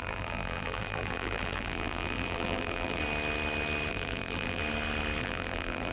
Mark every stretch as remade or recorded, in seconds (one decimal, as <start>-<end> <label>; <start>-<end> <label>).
0.0-3.0 remade; 3.0-3.9 recorded; 3.9-4.6 remade; 4.6-5.2 recorded; 5.2-5.9 remade